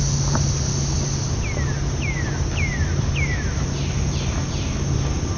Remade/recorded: recorded